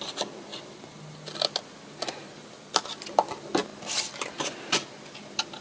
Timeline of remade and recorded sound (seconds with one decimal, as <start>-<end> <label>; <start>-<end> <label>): 0.0-5.6 recorded